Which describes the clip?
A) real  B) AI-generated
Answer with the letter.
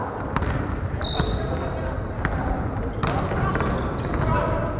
A